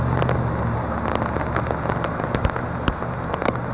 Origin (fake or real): real